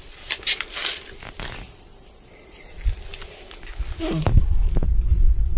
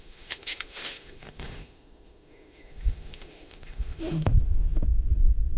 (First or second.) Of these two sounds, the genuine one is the first